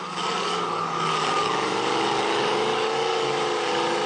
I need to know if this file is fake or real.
fake